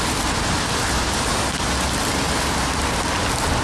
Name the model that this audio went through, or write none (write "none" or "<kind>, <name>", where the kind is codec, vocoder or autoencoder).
none